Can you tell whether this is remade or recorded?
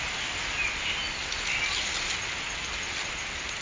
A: recorded